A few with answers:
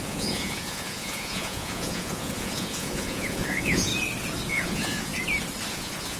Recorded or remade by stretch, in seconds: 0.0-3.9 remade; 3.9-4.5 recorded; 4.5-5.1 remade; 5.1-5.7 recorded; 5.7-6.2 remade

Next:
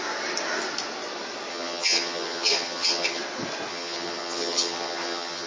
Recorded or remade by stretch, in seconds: 0.0-1.5 recorded; 1.5-3.2 remade; 3.2-3.7 recorded; 3.7-5.5 remade

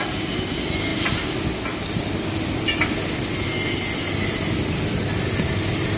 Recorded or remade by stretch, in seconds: 0.0-6.0 recorded

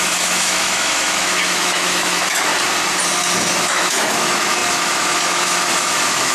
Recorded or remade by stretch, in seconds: 0.0-2.5 remade; 2.5-3.6 recorded; 3.6-6.3 remade

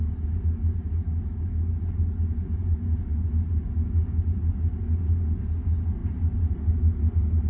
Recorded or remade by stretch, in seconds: 0.0-7.5 recorded

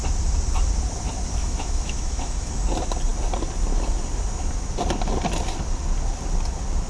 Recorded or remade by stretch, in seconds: 0.0-1.4 recorded; 1.4-2.5 remade; 2.5-6.9 recorded